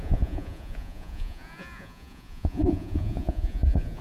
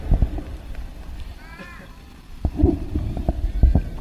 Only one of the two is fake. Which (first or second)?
first